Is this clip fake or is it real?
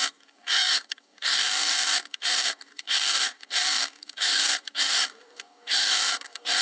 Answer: fake